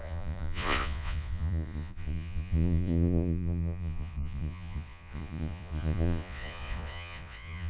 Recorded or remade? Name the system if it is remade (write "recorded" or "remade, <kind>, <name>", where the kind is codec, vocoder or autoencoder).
remade, vocoder, Vocos